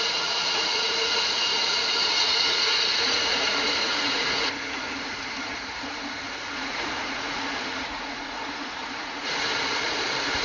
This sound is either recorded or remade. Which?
remade